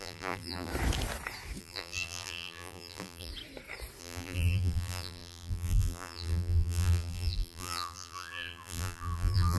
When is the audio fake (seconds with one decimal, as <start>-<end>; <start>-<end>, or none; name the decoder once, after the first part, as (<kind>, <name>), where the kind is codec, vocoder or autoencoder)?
0.0-0.7 (vocoder, BigVGAN v2); 1.6-3.3; 4.0-9.6